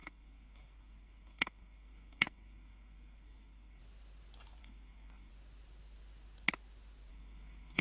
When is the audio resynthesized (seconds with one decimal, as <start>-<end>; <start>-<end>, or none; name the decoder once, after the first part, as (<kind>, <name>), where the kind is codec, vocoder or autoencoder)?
0.0-3.8 (codec, SNAC); 4.6-5.3; 7.1-7.8